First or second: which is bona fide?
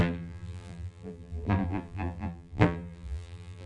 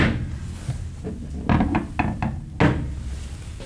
second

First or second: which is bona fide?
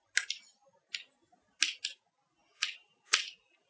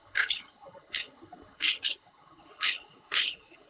first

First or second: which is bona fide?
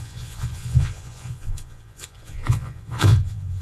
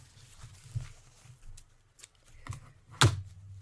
second